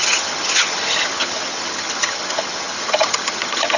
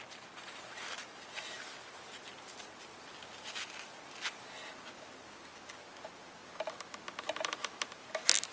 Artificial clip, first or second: first